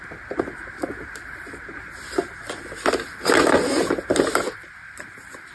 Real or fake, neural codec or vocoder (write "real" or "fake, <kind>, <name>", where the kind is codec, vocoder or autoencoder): real